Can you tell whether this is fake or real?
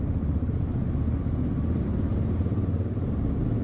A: real